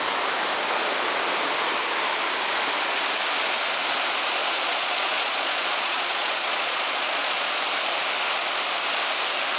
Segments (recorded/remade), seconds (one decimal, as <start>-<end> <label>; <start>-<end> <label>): 0.0-4.4 recorded; 4.4-7.7 remade; 7.7-9.6 recorded